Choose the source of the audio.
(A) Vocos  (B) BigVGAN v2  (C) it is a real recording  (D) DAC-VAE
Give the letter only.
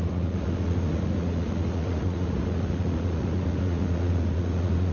A